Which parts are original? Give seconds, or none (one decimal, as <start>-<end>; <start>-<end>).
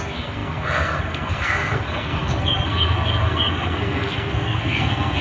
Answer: none